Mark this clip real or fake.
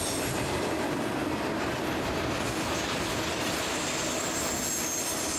real